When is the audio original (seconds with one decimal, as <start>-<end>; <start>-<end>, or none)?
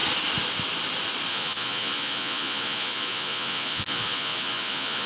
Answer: 0.0-1.3